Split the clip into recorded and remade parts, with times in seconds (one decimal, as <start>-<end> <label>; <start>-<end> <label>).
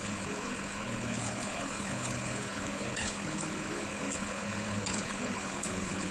0.0-6.1 remade